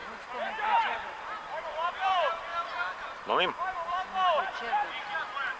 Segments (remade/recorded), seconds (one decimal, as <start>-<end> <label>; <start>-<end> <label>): 0.0-0.8 recorded; 0.8-2.5 remade; 2.5-5.1 recorded; 5.1-5.6 remade